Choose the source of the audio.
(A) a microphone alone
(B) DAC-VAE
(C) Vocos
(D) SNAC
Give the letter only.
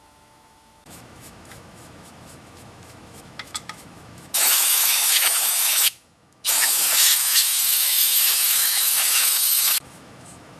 B